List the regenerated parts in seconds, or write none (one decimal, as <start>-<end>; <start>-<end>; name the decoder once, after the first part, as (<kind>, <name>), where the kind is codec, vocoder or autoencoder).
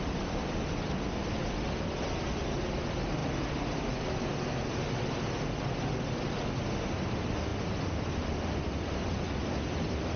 none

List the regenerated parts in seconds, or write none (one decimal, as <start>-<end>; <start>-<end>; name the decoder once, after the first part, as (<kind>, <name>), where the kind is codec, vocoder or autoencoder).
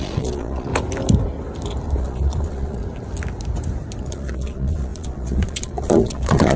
0.0-0.7 (vocoder, Vocos); 2.0-2.8; 4.0-6.6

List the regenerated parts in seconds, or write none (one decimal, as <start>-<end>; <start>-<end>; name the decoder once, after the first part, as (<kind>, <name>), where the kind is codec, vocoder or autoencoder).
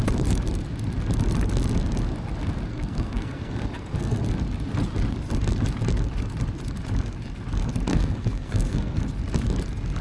2.7-4.2 (codec, SNAC); 7.9-9.0